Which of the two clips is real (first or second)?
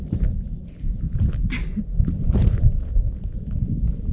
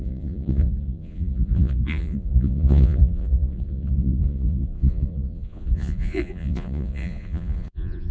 first